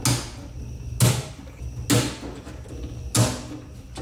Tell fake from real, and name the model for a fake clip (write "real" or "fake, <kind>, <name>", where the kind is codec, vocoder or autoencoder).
real